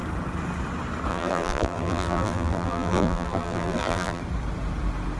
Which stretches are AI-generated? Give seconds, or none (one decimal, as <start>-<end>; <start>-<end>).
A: 1.1-4.2